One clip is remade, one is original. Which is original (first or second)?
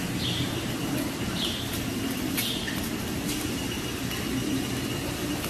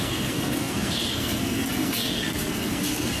first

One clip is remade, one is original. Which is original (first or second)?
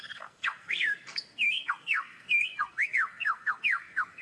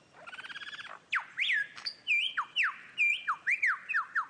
second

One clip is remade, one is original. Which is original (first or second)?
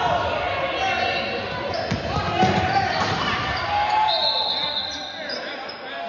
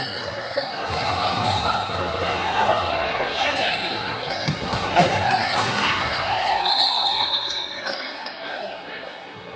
first